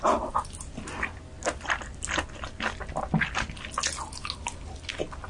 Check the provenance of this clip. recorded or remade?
recorded